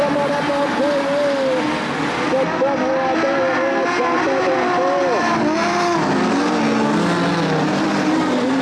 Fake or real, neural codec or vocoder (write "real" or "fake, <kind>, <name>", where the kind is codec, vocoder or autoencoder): real